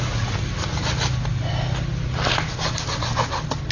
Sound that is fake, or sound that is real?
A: real